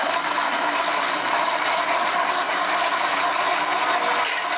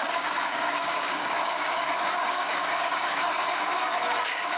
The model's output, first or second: second